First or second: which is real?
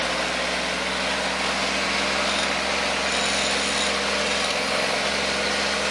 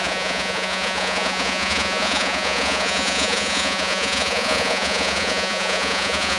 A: first